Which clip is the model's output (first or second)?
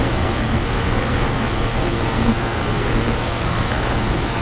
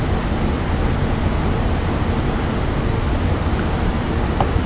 first